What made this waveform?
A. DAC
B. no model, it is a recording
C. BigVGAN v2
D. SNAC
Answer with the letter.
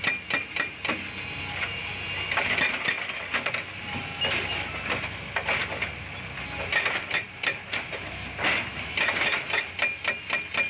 B